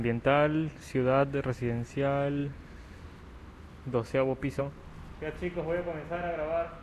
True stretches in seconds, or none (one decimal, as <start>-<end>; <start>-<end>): 0.0-6.8